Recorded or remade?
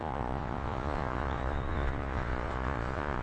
remade